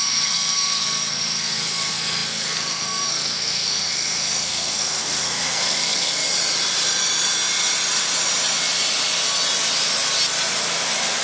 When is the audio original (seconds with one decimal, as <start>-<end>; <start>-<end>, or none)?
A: 6.2-11.2